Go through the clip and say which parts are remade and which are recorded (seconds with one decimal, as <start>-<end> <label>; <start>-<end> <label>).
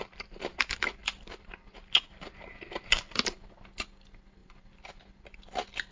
0.0-3.5 remade; 3.5-4.4 recorded; 4.4-5.0 remade; 5.0-5.9 recorded